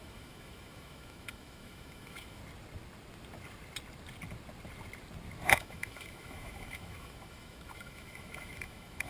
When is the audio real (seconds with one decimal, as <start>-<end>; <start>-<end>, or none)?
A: 2.4-5.5

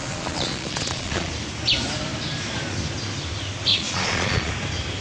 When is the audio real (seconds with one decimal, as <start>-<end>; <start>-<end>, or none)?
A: 1.3-3.7; 4.5-5.0

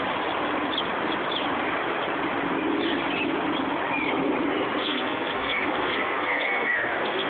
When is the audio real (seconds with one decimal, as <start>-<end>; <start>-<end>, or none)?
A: 0.0-4.8

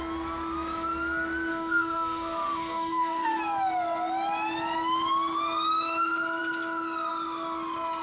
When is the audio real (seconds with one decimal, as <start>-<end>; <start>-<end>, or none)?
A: 0.0-1.5; 3.4-8.0

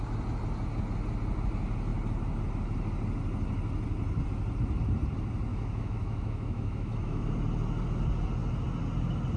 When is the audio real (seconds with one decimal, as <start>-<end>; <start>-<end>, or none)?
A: 0.0-5.5; 7.3-9.4

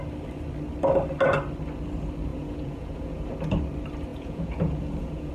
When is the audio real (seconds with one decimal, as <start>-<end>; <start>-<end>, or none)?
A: 0.0-2.3; 3.3-4.1